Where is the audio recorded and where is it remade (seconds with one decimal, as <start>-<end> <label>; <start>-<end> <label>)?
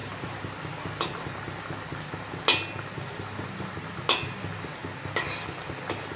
0.0-6.2 recorded